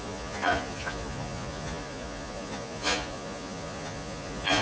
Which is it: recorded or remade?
remade